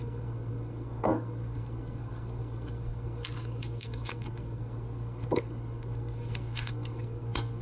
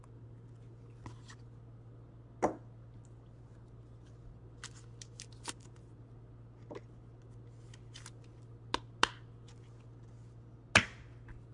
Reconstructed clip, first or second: first